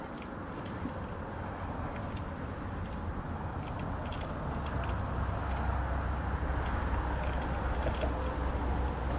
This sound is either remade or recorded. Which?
recorded